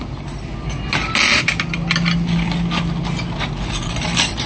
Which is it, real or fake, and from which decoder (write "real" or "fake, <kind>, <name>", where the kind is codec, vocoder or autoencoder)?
real